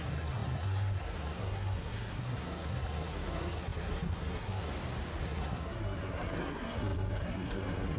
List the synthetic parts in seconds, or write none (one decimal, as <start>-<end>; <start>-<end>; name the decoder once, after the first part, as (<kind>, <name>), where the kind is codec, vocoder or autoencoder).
0.0-4.7 (codec, SNAC); 5.2-8.0